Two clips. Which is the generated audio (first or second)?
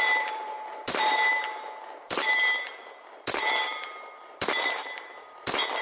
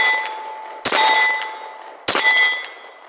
first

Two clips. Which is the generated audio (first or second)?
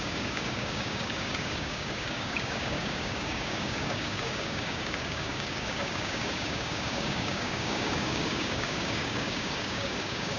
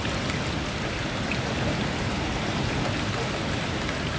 first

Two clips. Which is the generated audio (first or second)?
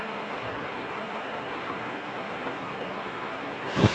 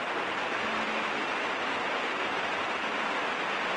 first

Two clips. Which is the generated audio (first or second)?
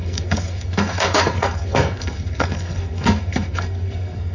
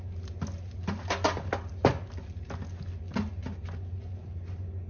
first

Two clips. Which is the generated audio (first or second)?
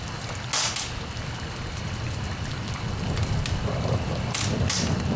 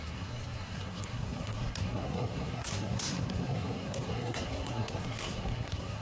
second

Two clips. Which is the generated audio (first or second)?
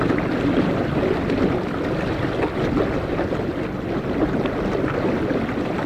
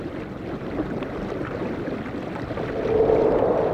second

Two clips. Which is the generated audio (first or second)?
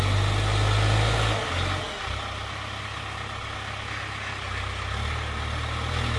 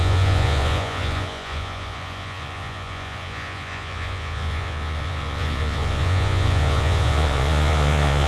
second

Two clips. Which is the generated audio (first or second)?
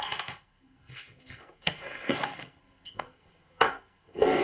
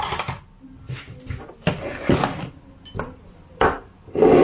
first